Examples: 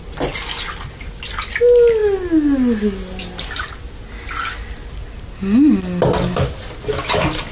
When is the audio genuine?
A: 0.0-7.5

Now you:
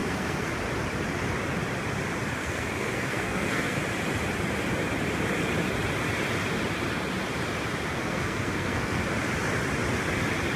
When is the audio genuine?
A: 0.5-2.4; 3.8-7.9; 9.0-10.6

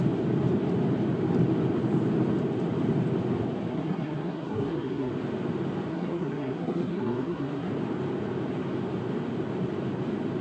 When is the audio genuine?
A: 0.0-3.7; 5.1-5.9; 7.7-10.4

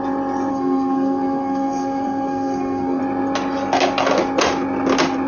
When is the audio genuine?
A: 0.0-0.5; 3.0-5.3

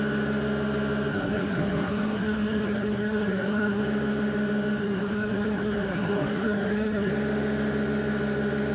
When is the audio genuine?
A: 0.0-1.1; 3.8-4.8; 7.1-8.7

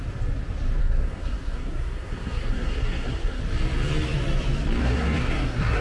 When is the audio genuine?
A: 0.0-0.8; 3.4-4.8

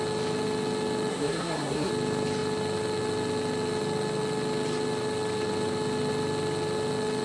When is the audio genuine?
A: 0.0-1.1; 1.9-7.2

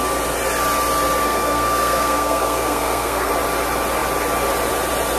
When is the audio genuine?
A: 0.0-1.2; 3.3-5.2